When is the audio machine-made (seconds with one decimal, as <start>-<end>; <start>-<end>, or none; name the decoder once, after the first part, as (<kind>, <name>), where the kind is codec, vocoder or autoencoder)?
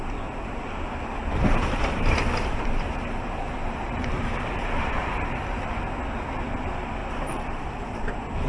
1.3-5.9 (vocoder, BigVGAN v2); 7.0-8.1